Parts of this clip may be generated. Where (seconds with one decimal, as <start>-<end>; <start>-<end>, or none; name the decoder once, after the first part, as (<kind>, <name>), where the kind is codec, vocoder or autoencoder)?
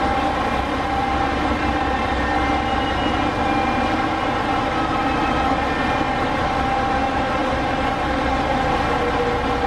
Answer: none